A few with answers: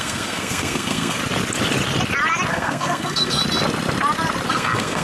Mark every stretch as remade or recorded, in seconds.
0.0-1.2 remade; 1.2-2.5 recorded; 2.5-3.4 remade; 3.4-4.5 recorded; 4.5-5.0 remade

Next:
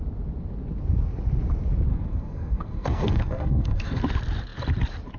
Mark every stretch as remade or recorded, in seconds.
0.0-1.9 recorded; 1.9-4.0 remade; 4.0-5.2 recorded

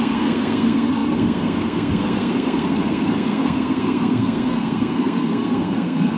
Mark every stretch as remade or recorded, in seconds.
0.0-6.2 remade

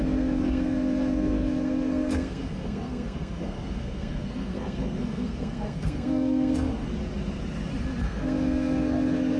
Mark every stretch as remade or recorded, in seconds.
0.0-6.9 remade; 6.9-8.0 recorded; 8.0-9.4 remade